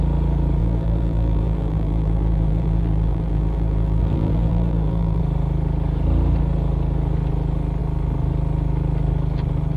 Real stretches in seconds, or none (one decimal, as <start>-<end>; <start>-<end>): 0.0-0.6; 5.2-9.8